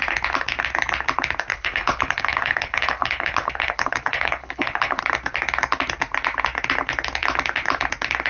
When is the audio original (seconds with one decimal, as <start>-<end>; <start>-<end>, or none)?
0.0-1.5; 5.0-8.3